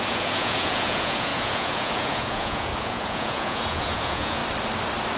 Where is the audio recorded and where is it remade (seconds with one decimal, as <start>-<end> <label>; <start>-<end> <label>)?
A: 0.0-4.4 remade; 4.4-5.2 recorded